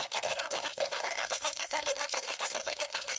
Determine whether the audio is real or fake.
fake